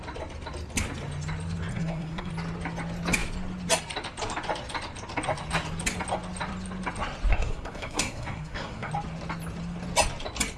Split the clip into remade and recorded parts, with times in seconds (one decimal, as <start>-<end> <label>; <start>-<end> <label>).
0.0-1.7 recorded; 1.7-2.3 remade; 2.3-7.3 recorded; 7.3-8.9 remade; 8.9-10.6 recorded